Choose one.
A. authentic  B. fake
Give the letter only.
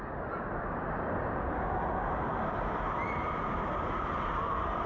A